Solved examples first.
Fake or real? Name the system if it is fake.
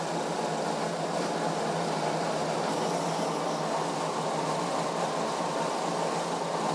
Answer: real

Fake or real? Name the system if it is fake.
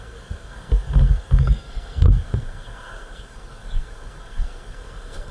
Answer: fake, codec, SNAC